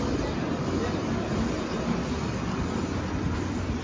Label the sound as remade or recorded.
recorded